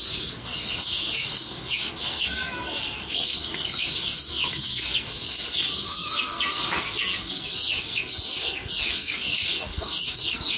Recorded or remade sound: remade